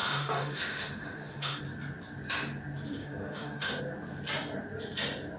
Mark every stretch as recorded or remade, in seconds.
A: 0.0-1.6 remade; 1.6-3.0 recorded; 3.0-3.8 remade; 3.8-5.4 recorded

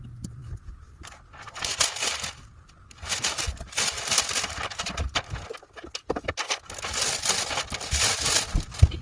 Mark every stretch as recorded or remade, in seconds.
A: 0.0-9.0 recorded

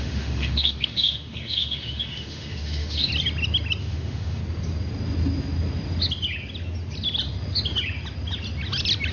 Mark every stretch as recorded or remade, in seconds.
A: 0.0-3.1 remade; 3.1-3.8 recorded; 3.8-4.4 remade; 4.4-9.1 recorded

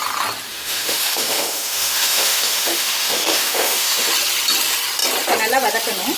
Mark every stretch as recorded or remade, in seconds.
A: 0.0-0.5 recorded; 0.5-4.1 remade; 4.1-6.2 recorded

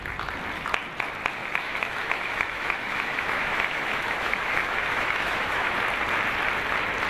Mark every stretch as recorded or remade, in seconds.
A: 0.0-1.4 recorded; 1.4-5.7 remade; 5.7-7.1 recorded